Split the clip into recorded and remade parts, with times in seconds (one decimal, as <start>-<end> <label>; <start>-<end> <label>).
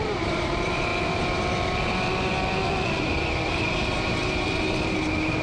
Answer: 0.0-0.9 remade; 0.9-3.0 recorded; 3.0-5.4 remade